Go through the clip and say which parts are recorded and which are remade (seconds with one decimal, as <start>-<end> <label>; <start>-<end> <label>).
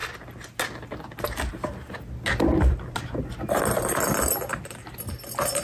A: 0.0-5.6 recorded